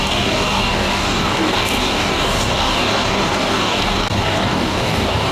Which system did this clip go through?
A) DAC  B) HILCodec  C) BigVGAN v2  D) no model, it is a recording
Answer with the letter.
A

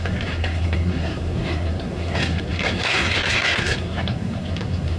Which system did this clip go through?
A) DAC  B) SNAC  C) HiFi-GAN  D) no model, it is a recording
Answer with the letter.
B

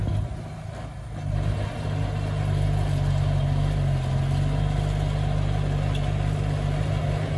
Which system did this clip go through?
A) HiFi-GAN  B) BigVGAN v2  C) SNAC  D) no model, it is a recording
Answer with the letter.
D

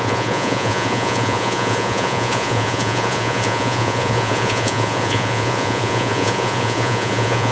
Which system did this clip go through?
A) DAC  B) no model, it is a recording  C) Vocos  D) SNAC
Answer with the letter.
C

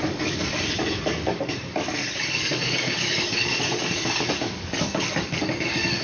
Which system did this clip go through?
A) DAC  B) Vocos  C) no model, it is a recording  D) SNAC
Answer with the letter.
A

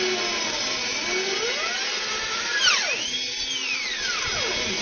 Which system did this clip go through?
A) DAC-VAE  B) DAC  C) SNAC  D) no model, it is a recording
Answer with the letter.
D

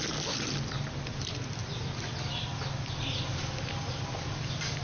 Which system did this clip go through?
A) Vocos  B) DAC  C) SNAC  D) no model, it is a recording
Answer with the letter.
D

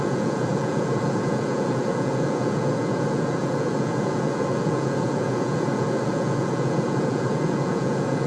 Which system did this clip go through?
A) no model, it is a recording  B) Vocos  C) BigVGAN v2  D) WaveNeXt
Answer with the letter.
B